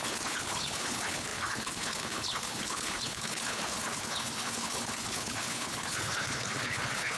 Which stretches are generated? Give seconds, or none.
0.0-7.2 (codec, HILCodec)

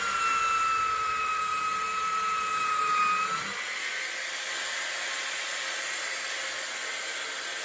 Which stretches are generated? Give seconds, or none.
none

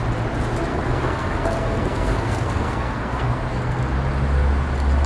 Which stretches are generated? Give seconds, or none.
0.7-3.8 (codec, SNAC)

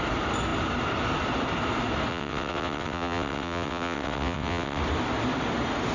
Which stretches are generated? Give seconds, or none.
2.1-4.8 (vocoder, WaveNeXt)